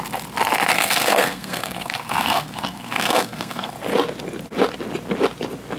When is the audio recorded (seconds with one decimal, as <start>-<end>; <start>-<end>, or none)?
0.0-0.7; 3.7-5.8